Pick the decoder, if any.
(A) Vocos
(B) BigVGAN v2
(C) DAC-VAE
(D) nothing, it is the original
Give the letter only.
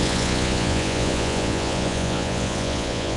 A